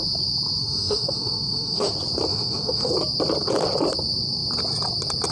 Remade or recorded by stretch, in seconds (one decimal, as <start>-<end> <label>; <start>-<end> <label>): 0.0-0.6 recorded; 0.6-1.9 remade; 1.9-2.3 recorded; 2.3-2.9 remade; 2.9-5.3 recorded